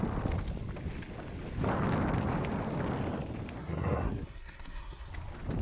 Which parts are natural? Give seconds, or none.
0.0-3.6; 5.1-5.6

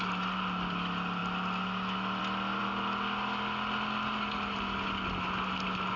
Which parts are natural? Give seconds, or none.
0.0-6.0

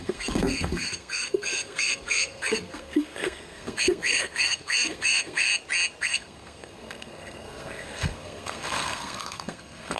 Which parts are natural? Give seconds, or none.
5.5-6.0